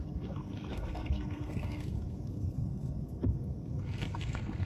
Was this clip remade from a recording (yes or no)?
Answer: yes